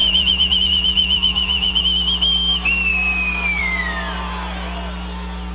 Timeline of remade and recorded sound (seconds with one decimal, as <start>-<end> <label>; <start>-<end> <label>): 0.0-1.8 remade; 1.8-5.5 recorded